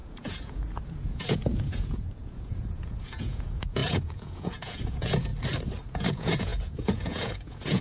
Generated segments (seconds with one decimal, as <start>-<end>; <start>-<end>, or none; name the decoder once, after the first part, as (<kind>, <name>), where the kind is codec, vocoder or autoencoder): 0.0-5.3 (vocoder, Vocos); 5.9-7.8